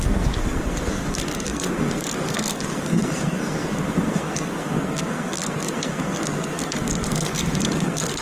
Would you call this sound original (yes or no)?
no